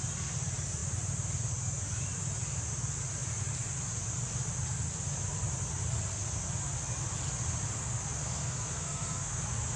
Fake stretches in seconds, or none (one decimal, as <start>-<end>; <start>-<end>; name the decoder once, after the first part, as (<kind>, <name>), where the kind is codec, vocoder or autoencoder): 8.2-9.4 (codec, SNAC)